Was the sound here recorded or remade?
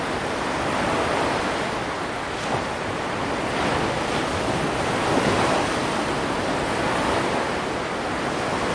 recorded